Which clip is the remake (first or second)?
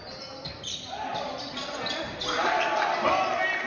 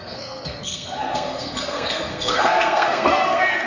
second